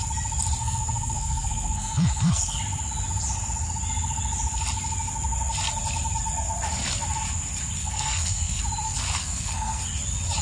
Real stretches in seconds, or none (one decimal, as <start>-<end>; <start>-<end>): 0.0-0.6; 2.6-7.8; 8.6-9.2; 9.8-10.4